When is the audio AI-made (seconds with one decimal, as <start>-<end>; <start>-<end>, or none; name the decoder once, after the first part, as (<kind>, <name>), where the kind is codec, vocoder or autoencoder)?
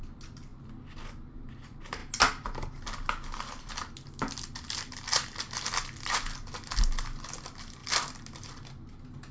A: none